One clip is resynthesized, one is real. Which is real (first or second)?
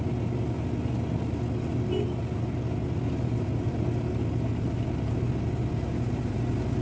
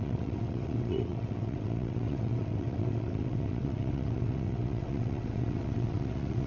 first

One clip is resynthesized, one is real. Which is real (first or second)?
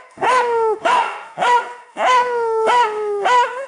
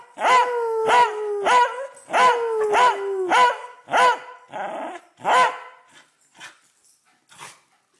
second